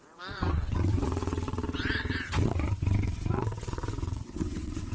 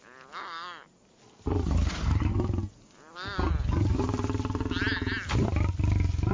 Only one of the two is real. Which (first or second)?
second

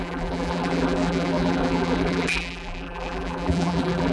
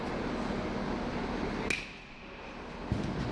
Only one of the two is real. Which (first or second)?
second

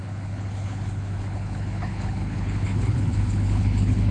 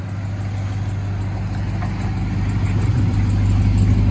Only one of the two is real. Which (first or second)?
second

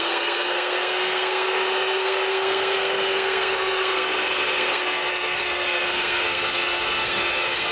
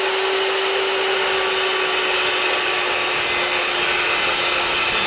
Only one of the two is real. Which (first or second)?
second